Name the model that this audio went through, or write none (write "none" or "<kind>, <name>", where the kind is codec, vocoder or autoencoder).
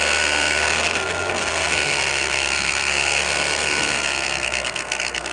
codec, SNAC